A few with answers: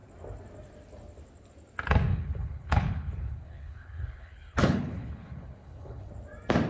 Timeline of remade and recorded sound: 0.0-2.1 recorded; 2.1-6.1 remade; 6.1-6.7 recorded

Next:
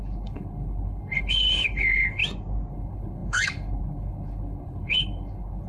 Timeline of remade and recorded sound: 0.0-2.2 remade; 2.2-2.7 recorded; 2.7-5.7 remade

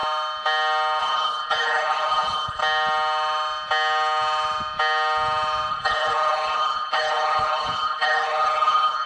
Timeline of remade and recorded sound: 0.0-1.0 recorded; 1.0-2.6 remade; 2.6-5.7 recorded; 5.7-9.1 remade

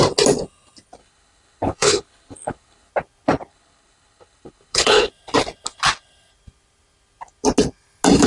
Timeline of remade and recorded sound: 0.0-1.0 recorded; 1.0-2.9 remade; 2.9-3.5 recorded; 3.5-5.1 remade; 5.1-8.3 recorded

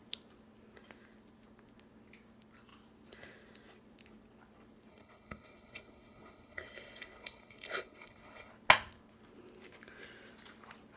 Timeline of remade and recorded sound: 0.0-4.9 recorded; 4.9-8.5 remade; 8.5-11.0 recorded

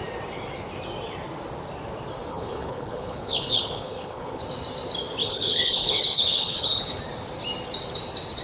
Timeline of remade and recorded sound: 0.0-2.3 recorded; 2.3-4.4 remade; 4.4-5.2 recorded; 5.2-7.0 remade; 7.0-8.4 recorded